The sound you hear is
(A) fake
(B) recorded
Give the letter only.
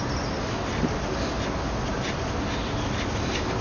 B